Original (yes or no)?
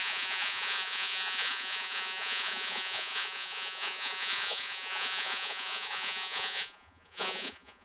no